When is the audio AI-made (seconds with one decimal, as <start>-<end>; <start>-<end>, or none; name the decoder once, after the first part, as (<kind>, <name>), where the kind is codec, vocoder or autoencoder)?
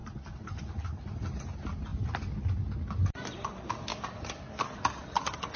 none